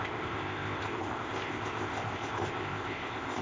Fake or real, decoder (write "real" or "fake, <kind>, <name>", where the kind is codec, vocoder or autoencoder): fake, codec, ZipCodec